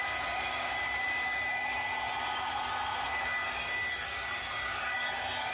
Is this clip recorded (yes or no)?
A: yes